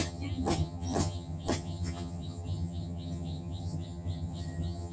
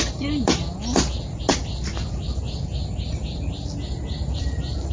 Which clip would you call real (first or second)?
second